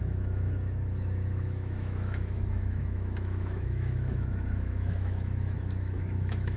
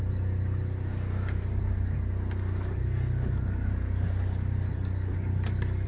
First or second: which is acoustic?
second